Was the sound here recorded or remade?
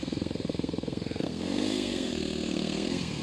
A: remade